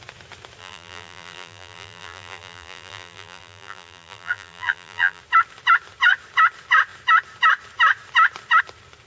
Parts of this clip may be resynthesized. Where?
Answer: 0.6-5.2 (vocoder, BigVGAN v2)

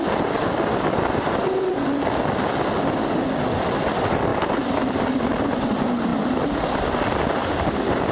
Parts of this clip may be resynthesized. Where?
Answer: 6.1-7.0 (vocoder, BigVGAN v2); 7.4-8.1

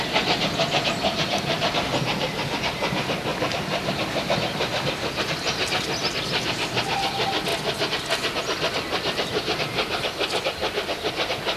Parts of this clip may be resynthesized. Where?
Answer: none

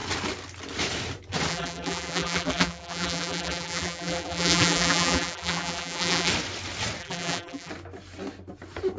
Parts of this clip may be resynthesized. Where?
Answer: 1.5-6.3 (vocoder, BigVGAN v2); 7.0-7.7

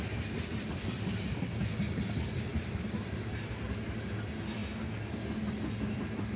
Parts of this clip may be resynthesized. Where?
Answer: 0.5-1.4 (vocoder, BigVGAN v2); 2.5-3.5